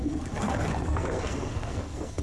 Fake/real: fake